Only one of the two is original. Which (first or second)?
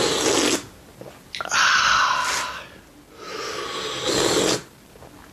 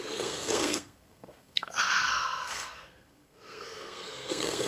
first